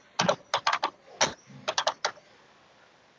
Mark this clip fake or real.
real